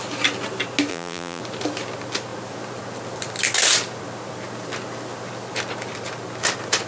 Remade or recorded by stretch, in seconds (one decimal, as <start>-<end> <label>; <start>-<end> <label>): 0.0-0.9 recorded; 0.9-1.4 remade; 1.4-6.9 recorded